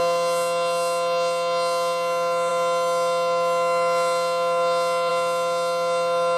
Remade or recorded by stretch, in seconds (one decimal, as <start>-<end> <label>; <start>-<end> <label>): 0.0-6.4 recorded